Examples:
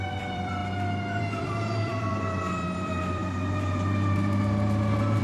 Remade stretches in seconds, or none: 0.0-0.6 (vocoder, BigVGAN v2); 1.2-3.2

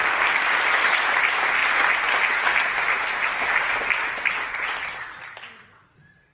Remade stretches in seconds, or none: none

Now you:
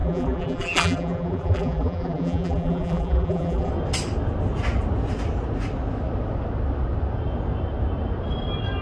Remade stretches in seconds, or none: 0.0-3.7 (vocoder, BigVGAN v2)

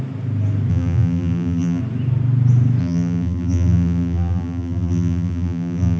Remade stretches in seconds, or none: 0.7-1.8 (vocoder, BigVGAN v2); 2.8-6.0

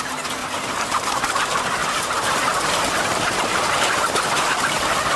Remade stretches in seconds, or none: 0.4-1.1 (vocoder, BigVGAN v2); 3.1-5.2

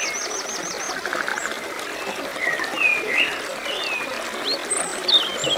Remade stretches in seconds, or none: none

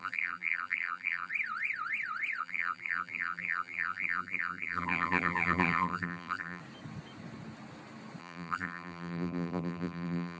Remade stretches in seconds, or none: 0.0-1.3 (vocoder, BigVGAN v2); 2.4-6.6; 8.2-10.4

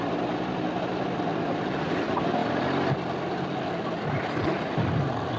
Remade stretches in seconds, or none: none